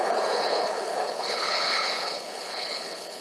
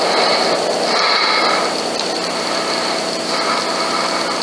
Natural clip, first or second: second